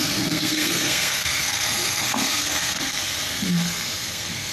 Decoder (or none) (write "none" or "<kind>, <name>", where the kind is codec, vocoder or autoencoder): codec, SNAC